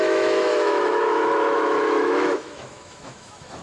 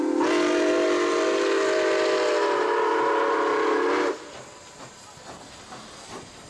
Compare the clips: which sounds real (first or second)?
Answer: second